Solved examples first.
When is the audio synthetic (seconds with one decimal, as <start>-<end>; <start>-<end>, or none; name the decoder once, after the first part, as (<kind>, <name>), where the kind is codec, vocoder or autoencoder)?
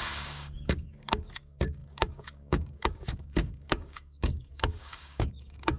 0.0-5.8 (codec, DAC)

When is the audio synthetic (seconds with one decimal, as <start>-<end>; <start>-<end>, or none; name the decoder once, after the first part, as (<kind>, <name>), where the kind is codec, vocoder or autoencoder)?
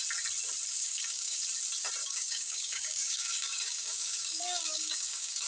0.7-1.4 (codec, DAC); 2.0-5.5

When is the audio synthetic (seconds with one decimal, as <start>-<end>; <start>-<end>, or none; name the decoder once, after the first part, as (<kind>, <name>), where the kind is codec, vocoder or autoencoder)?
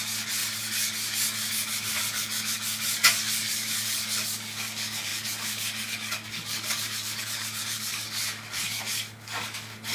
0.0-9.9 (codec, DAC)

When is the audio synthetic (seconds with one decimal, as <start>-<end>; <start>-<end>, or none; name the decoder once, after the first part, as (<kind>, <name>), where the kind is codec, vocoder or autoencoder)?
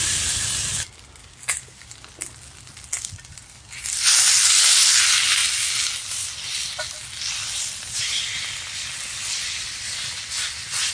1.2-1.9 (codec, DAC)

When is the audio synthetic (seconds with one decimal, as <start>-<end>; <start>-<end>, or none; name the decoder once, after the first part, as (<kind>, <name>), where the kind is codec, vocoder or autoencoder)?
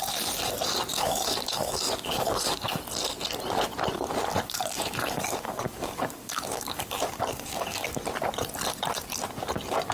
0.9-2.8 (codec, DAC); 4.3-8.0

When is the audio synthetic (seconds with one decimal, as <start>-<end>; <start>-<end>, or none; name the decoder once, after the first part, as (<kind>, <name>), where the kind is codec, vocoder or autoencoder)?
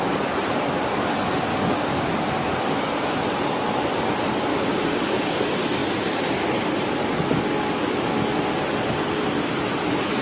1.5-2.1 (codec, DAC); 4.5-5.3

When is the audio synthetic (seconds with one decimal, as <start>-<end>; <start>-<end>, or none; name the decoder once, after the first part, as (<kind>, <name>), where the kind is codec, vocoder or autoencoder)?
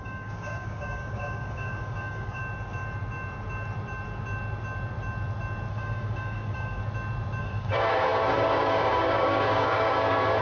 0.0-2.4 (codec, DAC); 5.7-6.8; 7.4-10.4